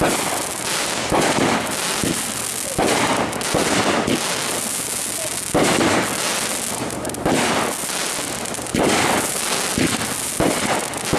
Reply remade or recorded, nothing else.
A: recorded